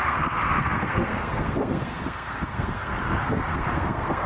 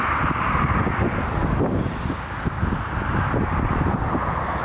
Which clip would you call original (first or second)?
second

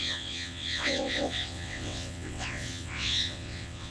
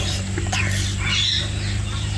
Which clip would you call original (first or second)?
second